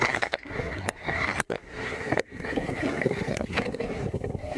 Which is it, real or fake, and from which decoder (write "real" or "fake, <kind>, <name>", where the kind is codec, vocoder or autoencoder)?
fake, codec, SNAC